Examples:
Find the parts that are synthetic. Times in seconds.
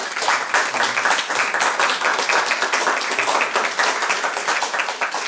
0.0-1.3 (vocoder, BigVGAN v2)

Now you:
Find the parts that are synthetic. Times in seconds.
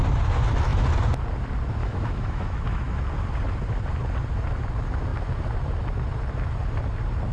1.8-3.0 (autoencoder, DAC-VAE)